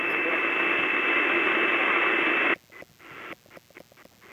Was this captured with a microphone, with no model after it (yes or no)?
yes